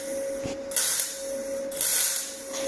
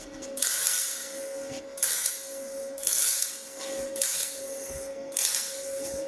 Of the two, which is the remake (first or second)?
second